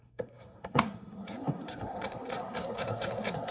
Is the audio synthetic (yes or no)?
yes